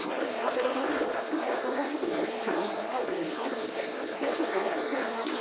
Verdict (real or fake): fake